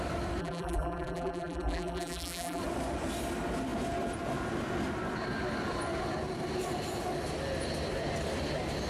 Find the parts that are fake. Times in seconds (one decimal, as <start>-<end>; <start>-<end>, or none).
0.4-2.6